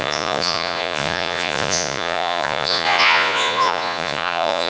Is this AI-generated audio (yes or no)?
yes